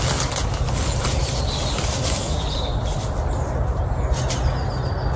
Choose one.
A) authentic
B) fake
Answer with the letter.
A